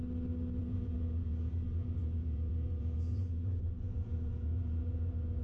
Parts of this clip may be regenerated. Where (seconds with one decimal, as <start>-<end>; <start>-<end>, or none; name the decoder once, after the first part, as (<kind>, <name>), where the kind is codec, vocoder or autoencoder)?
0.6-1.5 (vocoder, Vocos); 2.0-5.4